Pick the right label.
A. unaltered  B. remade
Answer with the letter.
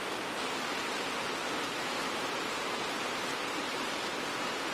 A